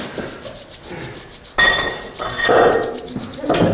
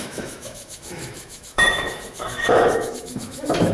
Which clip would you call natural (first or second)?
first